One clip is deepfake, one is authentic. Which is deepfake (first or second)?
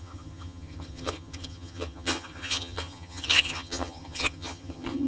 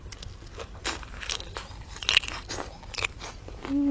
first